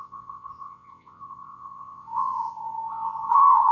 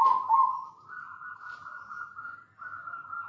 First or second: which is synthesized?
first